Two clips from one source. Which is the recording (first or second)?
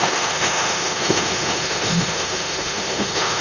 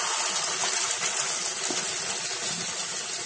second